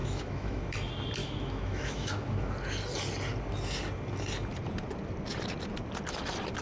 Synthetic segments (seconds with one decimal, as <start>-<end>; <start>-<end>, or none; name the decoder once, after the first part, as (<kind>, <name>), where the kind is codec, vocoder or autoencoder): 0.0-0.6 (autoencoder, DAC-VAE); 1.2-2.5